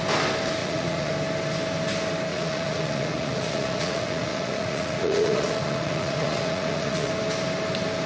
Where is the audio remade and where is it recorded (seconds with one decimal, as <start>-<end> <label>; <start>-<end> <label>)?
0.0-0.6 recorded; 0.6-1.1 remade; 1.1-2.3 recorded; 2.3-7.1 remade; 7.1-8.1 recorded